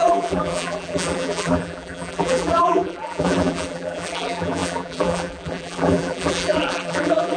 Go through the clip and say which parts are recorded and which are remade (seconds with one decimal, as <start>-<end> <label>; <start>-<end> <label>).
0.0-7.4 remade